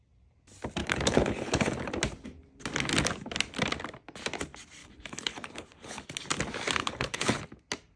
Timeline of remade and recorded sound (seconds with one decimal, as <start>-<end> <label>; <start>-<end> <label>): 0.0-0.8 recorded; 0.8-1.9 remade; 1.9-4.8 recorded; 4.8-6.0 remade; 6.0-6.8 recorded; 6.8-7.4 remade; 7.4-8.0 recorded